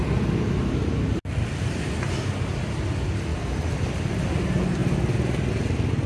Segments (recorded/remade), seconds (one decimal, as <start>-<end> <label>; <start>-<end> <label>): 0.0-6.1 recorded